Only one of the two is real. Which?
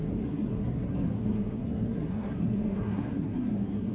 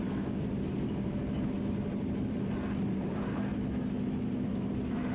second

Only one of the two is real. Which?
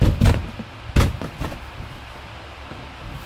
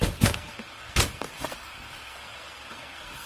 first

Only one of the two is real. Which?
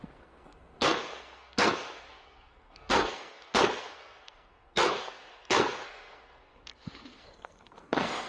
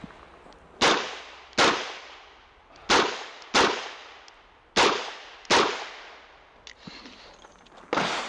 second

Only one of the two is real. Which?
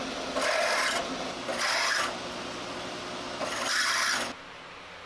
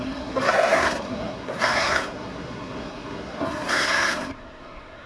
first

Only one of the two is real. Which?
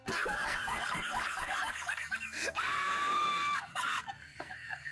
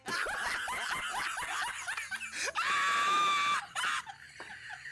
second